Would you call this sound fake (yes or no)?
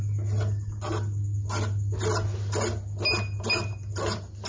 no